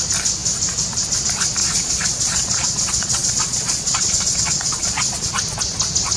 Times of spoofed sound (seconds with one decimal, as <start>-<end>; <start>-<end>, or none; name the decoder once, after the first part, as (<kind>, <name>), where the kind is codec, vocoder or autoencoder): 1.6-5.3 (vocoder, Vocos)